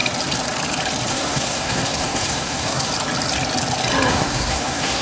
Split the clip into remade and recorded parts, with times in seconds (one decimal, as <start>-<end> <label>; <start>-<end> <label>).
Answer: 0.0-1.1 recorded; 1.1-2.9 remade; 2.9-4.1 recorded; 4.1-5.0 remade